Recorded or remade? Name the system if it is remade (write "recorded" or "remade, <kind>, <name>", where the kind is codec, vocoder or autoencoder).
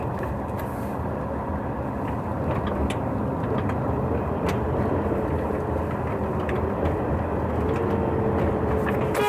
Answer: recorded